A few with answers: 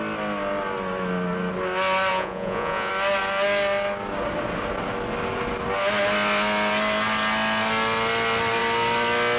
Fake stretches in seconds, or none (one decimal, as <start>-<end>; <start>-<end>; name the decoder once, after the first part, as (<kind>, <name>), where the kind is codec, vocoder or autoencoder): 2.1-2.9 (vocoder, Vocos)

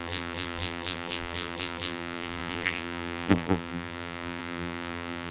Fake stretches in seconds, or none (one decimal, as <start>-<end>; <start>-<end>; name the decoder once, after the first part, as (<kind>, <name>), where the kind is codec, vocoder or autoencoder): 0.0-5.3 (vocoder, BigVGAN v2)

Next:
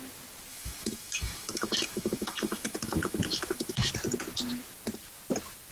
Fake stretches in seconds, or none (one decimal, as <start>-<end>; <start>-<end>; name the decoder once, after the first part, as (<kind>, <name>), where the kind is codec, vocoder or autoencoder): 0.5-3.9 (autoencoder, DAC-VAE)

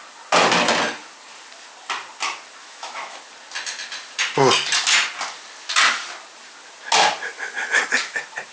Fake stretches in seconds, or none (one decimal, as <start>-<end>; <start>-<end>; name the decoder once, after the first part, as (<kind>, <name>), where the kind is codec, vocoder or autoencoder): 2.6-3.2 (autoencoder, DAC-VAE)

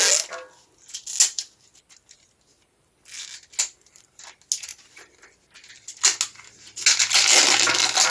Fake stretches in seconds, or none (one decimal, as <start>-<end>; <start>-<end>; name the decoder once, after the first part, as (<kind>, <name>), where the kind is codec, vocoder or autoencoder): none